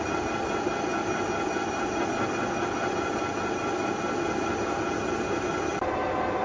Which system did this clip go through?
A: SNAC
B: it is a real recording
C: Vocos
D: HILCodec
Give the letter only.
B